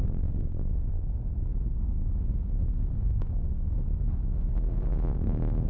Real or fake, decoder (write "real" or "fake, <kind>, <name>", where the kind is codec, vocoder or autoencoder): fake, codec, SNAC